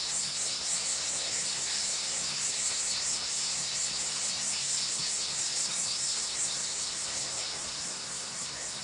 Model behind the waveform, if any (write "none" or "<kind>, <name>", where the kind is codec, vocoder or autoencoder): codec, SNAC